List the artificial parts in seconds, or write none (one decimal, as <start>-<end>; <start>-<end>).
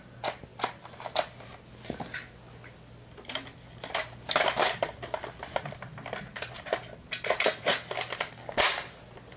none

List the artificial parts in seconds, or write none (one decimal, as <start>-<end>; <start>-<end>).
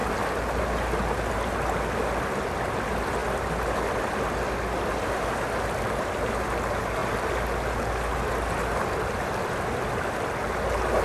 none